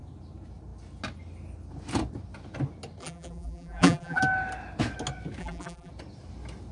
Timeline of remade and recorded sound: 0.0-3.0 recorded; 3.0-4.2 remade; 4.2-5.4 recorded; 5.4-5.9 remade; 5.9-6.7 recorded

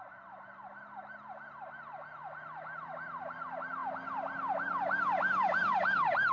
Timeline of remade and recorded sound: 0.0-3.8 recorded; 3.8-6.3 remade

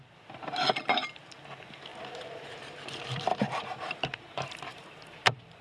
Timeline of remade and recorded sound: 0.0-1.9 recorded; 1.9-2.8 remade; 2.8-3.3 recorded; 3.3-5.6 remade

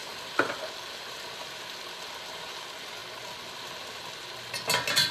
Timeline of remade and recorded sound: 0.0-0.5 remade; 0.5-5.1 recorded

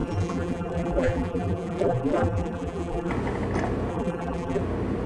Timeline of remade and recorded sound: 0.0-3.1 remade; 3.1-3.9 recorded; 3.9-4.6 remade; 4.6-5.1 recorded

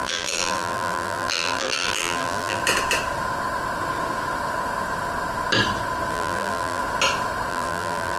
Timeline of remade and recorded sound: 0.0-2.6 remade; 2.6-6.1 recorded; 6.1-6.8 remade; 6.8-7.5 recorded; 7.5-8.2 remade

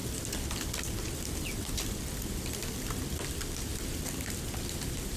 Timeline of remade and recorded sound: 0.0-3.1 recorded; 3.1-5.2 remade

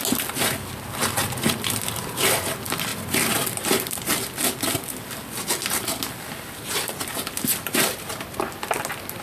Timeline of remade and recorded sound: 0.0-2.9 recorded; 2.9-4.2 remade; 4.2-9.2 recorded